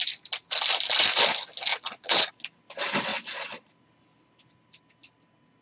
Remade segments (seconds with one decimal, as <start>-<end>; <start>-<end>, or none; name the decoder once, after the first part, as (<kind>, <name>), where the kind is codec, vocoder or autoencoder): 1.7-2.3 (vocoder, Vocos); 3.1-3.7